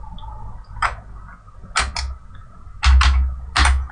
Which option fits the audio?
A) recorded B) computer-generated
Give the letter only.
A